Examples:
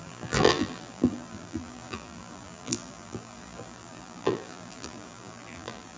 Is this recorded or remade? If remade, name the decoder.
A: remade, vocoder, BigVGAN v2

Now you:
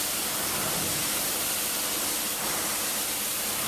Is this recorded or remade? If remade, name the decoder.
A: recorded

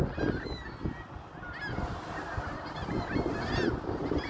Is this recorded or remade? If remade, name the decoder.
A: recorded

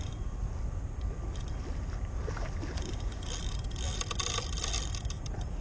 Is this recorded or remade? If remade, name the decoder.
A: remade, vocoder, BigVGAN v2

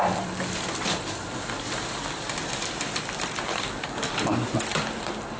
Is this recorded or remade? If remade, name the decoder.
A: remade, vocoder, BigVGAN v2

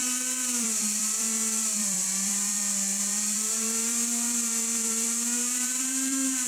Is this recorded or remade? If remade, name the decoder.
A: remade, vocoder, BigVGAN v2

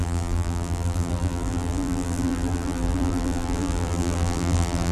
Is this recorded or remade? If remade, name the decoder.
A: remade, vocoder, BigVGAN v2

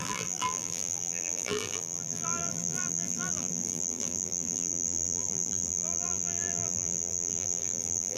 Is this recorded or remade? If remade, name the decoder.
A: remade, vocoder, BigVGAN v2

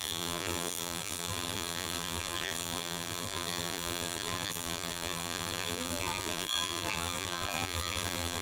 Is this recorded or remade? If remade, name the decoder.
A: remade, vocoder, BigVGAN v2